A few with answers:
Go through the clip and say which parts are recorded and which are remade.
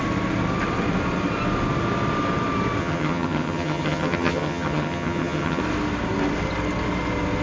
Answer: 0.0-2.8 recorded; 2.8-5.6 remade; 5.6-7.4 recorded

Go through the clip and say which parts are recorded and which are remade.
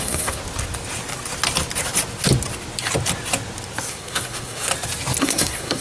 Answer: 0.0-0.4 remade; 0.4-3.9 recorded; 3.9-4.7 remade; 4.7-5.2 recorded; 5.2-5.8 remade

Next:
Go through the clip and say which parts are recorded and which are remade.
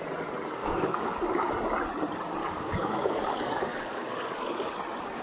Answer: 0.0-0.6 recorded; 0.6-1.5 remade; 1.5-2.4 recorded; 2.4-4.7 remade; 4.7-5.2 recorded